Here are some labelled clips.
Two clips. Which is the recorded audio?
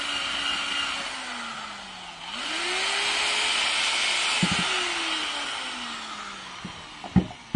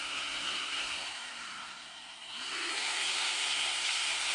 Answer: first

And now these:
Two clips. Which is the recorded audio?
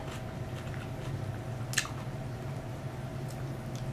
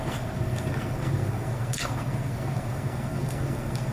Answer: first